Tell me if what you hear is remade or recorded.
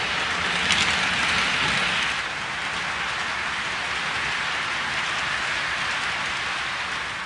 recorded